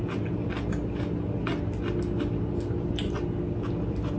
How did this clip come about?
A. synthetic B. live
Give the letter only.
B